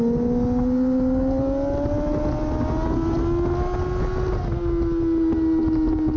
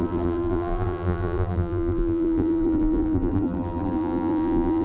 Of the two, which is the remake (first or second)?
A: second